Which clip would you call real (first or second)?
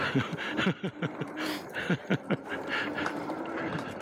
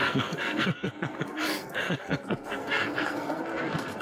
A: first